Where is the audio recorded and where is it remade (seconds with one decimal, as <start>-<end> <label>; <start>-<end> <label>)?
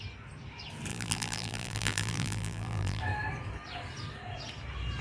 0.0-0.9 recorded; 0.9-3.0 remade; 3.0-5.0 recorded